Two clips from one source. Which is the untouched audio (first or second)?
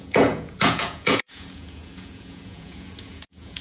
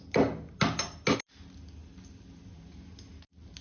second